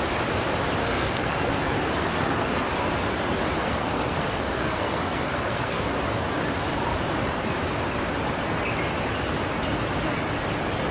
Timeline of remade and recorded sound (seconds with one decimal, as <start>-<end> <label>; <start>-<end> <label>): 0.0-0.8 recorded; 0.8-2.6 remade; 2.6-3.6 recorded; 3.6-5.8 remade; 5.8-10.9 recorded